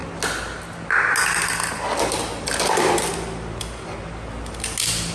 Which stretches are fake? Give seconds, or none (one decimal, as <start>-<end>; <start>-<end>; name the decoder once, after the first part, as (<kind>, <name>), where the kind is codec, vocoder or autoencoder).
none